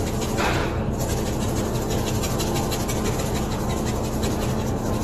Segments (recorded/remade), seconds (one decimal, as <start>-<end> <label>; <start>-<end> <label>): 0.0-5.0 recorded